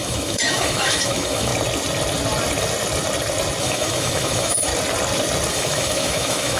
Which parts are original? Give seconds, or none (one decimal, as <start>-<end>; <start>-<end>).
1.5-3.6; 4.7-5.5

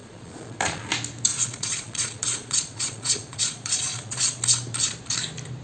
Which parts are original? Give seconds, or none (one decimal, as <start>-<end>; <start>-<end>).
0.9-1.3; 4.4-5.6

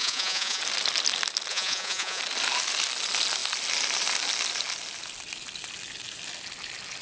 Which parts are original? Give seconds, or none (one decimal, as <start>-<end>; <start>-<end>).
0.6-1.5; 2.2-7.0